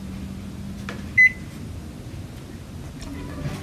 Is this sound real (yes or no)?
yes